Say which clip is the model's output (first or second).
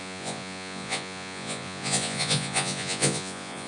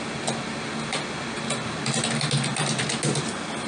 first